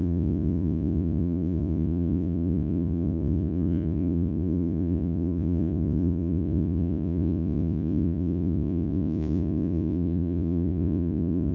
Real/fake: fake